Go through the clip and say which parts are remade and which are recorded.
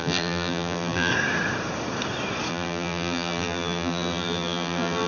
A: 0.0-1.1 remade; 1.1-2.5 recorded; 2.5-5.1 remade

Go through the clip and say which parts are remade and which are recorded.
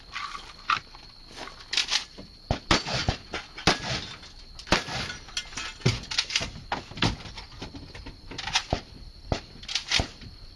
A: 0.0-8.6 recorded; 8.6-9.6 remade; 9.6-10.6 recorded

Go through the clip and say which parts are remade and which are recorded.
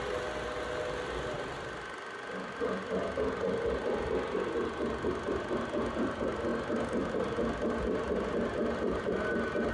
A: 0.0-9.7 recorded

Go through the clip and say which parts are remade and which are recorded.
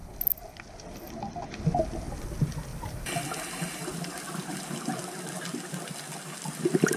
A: 0.0-2.7 recorded; 2.7-4.8 remade; 4.8-7.0 recorded